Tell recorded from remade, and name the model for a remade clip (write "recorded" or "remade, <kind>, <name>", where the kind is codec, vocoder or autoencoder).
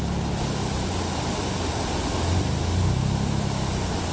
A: recorded